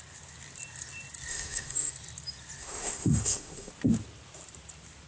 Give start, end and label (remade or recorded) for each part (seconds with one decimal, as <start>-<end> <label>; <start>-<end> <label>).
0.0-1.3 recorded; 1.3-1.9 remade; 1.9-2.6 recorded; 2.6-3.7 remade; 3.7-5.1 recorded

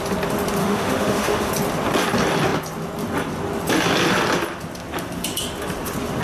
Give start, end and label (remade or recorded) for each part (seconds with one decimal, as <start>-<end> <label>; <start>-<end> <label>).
0.0-0.6 recorded; 0.6-1.5 remade; 1.5-6.2 recorded

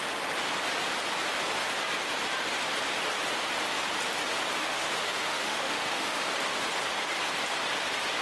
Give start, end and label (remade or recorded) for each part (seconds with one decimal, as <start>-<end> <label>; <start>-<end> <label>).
0.0-4.6 recorded; 4.6-6.2 remade; 6.2-8.2 recorded

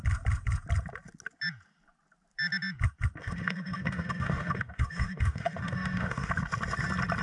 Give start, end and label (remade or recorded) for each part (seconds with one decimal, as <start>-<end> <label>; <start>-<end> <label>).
0.0-3.2 recorded; 3.2-6.3 remade; 6.3-7.2 recorded

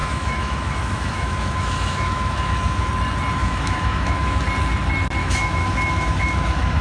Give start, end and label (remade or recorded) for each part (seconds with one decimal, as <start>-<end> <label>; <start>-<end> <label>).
0.0-2.9 remade; 2.9-3.4 recorded; 3.4-4.4 remade; 4.4-5.2 recorded; 5.2-6.8 remade

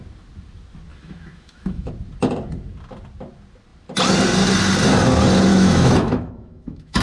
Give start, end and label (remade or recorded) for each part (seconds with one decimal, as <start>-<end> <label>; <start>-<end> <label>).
0.0-0.9 recorded; 0.9-1.9 remade; 1.9-5.5 recorded; 5.5-7.0 remade

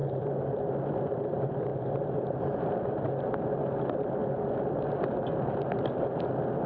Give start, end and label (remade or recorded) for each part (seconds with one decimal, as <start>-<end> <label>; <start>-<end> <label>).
0.0-6.7 recorded